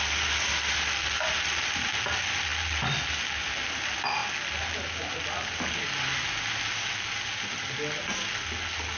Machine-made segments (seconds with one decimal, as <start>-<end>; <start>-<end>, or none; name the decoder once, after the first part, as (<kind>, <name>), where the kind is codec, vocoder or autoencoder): none